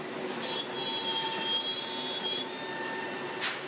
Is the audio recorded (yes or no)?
yes